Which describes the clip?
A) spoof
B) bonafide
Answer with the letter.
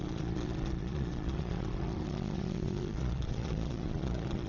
A